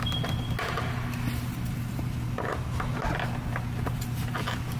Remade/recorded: recorded